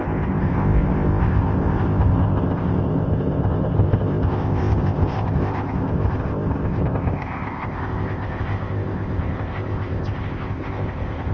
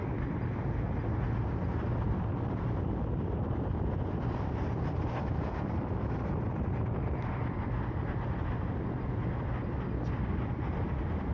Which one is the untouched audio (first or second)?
second